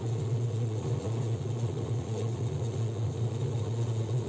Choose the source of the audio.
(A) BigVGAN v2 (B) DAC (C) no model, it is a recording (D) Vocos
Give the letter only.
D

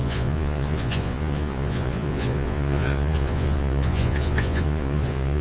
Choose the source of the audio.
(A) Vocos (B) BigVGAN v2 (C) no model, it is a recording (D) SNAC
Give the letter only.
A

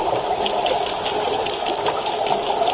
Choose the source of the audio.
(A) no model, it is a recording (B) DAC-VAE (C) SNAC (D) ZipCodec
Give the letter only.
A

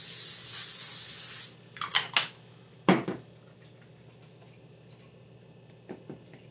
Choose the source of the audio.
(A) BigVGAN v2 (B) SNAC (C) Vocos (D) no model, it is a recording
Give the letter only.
D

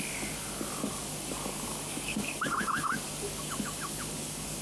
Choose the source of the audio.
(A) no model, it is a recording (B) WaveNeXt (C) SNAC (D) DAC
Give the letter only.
D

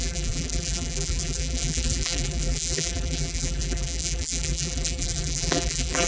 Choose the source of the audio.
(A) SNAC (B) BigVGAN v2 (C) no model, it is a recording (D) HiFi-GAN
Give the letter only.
B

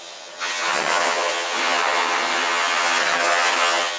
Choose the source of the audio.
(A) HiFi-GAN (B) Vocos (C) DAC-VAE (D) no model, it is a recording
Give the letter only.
A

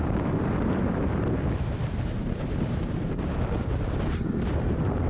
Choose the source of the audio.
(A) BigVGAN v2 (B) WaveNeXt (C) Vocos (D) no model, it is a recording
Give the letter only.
A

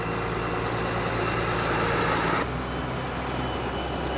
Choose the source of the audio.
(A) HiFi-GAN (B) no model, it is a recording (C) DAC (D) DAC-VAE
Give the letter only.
B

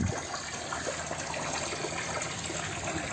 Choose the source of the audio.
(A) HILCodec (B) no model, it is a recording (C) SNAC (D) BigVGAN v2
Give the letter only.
B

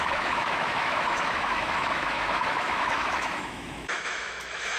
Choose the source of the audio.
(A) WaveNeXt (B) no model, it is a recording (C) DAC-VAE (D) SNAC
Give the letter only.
C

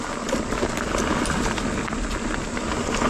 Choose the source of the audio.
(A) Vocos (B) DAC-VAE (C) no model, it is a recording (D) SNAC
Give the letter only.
C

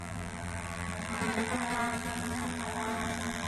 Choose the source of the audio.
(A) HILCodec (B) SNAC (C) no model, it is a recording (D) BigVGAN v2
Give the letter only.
D